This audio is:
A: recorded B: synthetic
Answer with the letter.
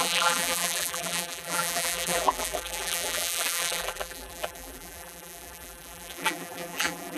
B